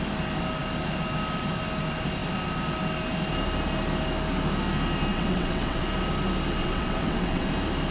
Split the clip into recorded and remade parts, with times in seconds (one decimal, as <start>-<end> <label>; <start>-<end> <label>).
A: 0.0-5.1 recorded; 5.1-5.8 remade; 5.8-6.6 recorded; 6.6-7.5 remade; 7.5-7.9 recorded